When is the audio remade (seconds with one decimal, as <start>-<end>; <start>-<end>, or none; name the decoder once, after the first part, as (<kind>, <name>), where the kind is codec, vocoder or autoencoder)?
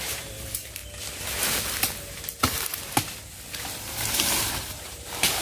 0.0-0.8 (vocoder, BigVGAN v2); 4.0-5.4